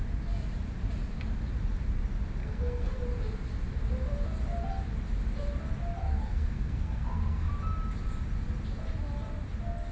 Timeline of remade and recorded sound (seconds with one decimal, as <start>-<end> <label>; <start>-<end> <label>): 0.0-2.4 recorded; 2.4-3.0 remade; 3.0-6.0 recorded; 6.0-7.5 remade; 7.5-9.9 recorded